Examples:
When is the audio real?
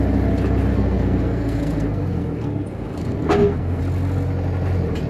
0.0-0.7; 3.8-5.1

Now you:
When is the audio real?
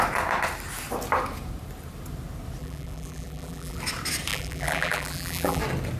0.0-2.6; 3.8-4.3; 5.6-6.0